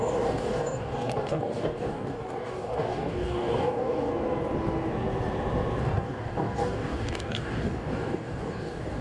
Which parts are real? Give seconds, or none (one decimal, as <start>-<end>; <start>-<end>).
4.1-5.8